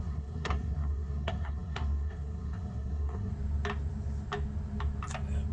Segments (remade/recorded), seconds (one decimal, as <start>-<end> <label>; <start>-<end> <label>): 0.0-3.3 remade; 3.3-5.5 recorded